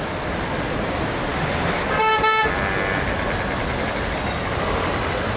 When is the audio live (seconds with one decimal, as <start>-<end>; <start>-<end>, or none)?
0.0-5.4